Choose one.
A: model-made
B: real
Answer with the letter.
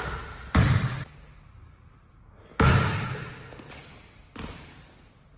B